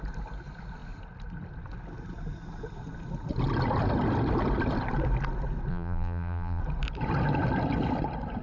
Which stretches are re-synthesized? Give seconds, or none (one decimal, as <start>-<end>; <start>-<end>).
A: 5.7-6.6